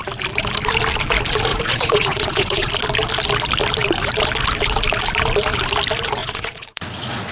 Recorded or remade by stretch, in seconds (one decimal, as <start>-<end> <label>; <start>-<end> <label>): 0.0-1.5 recorded; 1.5-2.7 remade; 2.7-6.2 recorded; 6.2-7.3 remade